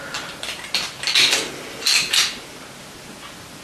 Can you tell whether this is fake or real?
real